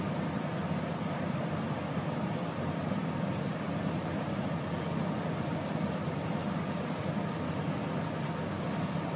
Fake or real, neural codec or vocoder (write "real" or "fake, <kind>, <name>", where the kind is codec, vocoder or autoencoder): real